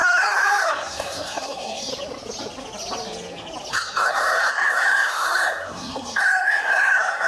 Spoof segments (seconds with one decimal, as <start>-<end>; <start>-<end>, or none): 0.0-1.9; 3.7-7.3